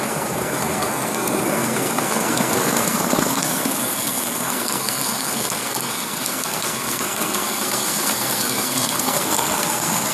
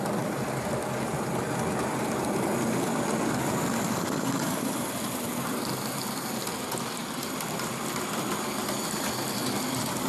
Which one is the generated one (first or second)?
first